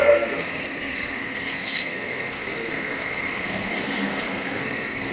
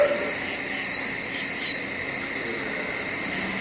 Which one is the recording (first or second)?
second